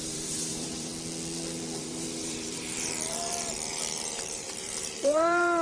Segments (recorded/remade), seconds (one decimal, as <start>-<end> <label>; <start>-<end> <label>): 0.0-0.9 remade; 0.9-1.8 recorded; 1.8-5.6 remade